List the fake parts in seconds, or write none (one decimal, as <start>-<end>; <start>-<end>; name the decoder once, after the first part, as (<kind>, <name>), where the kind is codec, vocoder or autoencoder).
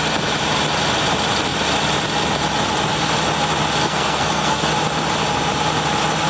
3.8-4.7 (codec, SNAC)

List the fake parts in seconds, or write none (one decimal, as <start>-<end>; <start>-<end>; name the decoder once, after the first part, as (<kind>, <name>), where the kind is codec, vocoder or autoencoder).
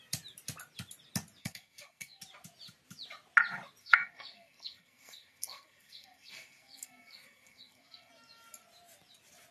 1.4-2.2 (codec, SNAC); 3.8-8.1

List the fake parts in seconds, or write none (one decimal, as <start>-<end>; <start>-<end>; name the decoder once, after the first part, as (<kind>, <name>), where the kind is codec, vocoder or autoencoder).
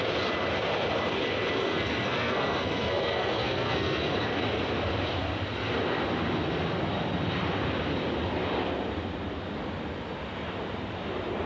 1.7-4.0 (codec, SNAC)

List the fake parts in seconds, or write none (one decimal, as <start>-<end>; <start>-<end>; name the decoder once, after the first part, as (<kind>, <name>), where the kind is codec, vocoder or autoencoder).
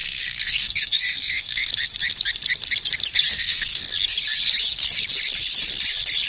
0.0-1.7 (codec, SNAC); 3.3-3.8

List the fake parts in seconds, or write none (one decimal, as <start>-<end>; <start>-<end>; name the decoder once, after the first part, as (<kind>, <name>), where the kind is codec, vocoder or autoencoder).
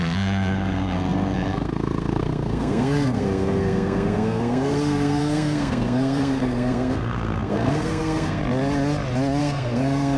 0.0-8.4 (codec, SNAC); 9.4-10.2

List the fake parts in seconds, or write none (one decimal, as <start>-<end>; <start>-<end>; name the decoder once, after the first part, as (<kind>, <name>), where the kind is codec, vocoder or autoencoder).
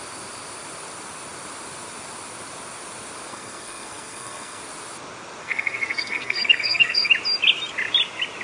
3.3-4.6 (codec, SNAC); 5.4-7.1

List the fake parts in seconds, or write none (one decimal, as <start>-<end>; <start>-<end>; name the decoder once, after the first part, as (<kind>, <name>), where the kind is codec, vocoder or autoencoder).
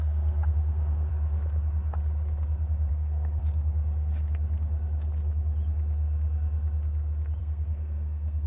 0.0-1.1 (codec, SNAC); 2.9-3.4; 7.4-8.5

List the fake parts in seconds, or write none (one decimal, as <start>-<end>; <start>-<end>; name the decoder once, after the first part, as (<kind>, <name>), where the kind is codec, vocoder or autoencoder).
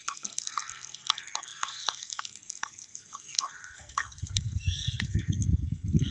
0.0-6.1 (codec, SNAC)